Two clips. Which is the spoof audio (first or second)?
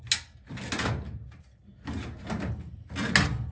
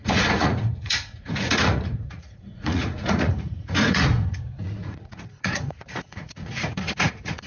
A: second